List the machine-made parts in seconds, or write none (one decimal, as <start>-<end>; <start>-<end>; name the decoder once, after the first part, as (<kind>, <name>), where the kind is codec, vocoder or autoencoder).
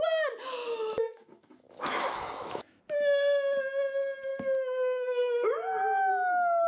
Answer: 0.6-2.8 (autoencoder, DAC-VAE); 4.3-6.1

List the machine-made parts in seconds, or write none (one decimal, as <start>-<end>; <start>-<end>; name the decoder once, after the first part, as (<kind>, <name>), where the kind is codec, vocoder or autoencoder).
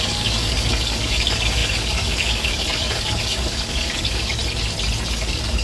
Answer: 0.0-4.4 (codec, DAC); 5.1-5.6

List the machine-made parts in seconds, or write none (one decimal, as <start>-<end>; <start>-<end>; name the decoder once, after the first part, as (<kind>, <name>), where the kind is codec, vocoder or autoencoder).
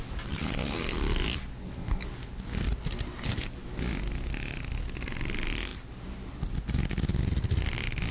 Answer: none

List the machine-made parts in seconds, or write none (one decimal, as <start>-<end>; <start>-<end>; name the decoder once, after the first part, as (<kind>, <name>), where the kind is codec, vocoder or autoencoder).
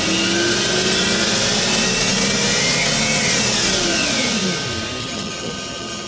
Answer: 5.0-6.1 (vocoder, HiFi-GAN)